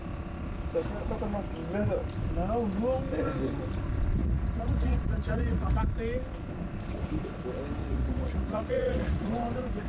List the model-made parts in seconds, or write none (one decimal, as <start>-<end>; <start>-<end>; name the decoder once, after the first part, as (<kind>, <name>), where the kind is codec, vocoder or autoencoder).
4.2-5.8 (vocoder, Vocos); 7.8-9.3

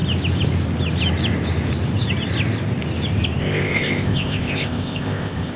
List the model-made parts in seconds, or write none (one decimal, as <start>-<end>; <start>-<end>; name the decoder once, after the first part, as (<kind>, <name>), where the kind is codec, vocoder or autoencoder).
3.4-5.6 (codec, ZipCodec)

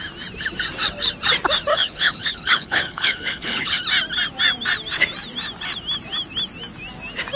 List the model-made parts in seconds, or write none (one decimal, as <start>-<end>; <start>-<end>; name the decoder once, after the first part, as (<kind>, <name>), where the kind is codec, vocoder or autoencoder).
1.7-3.8 (codec, HILCodec)

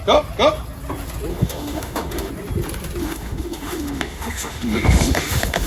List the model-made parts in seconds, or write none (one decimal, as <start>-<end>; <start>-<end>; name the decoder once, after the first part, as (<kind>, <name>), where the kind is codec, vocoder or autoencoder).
1.3-2.3 (autoencoder, DAC-VAE); 3.0-5.7